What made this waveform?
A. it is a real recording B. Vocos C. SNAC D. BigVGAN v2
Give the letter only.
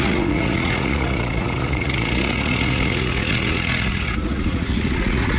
B